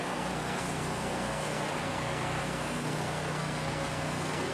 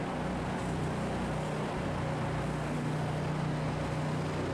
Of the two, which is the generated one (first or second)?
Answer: first